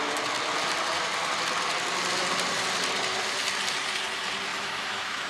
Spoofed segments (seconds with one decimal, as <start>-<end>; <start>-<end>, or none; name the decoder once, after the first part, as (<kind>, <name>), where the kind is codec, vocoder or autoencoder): 4.5-5.3 (autoencoder, DAC-VAE)